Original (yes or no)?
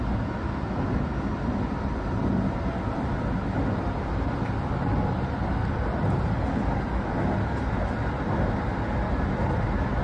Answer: yes